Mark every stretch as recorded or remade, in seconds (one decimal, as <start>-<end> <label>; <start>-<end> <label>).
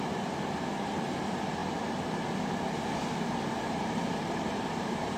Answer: 0.0-1.6 remade; 1.6-3.8 recorded; 3.8-5.2 remade